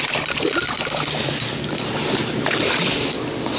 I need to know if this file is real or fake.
real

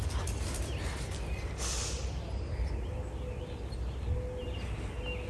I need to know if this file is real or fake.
real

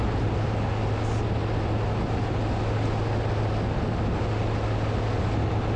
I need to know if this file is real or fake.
real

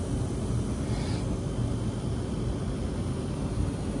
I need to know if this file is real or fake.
real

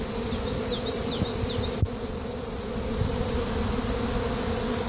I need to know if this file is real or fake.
real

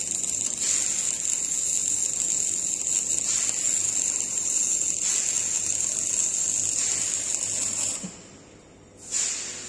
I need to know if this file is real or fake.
real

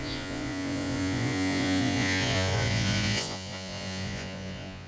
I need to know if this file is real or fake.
fake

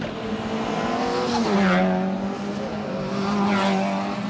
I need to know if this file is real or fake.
real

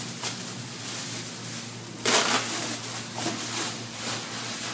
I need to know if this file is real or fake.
real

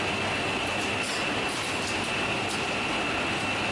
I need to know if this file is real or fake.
real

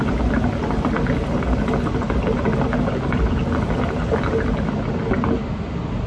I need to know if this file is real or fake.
real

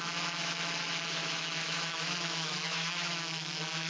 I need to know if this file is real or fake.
fake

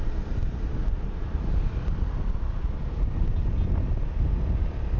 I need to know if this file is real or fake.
real